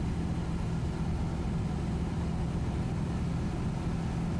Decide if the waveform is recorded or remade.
recorded